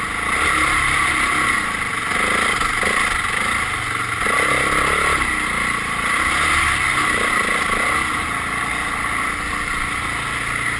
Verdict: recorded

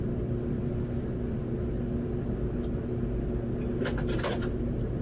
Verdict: recorded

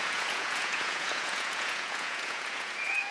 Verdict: remade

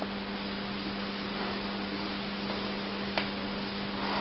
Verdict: recorded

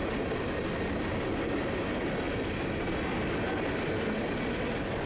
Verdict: recorded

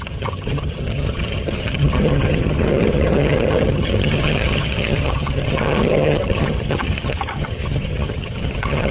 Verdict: remade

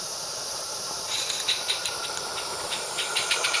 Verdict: remade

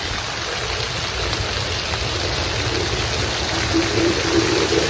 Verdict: recorded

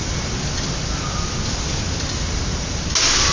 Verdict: recorded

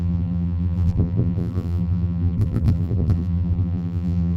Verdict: remade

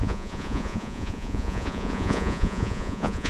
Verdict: remade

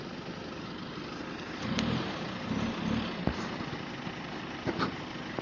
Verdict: recorded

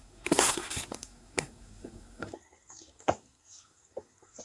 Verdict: remade